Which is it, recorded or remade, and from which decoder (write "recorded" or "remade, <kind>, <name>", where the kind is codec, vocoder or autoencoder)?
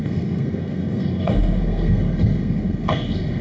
remade, codec, SNAC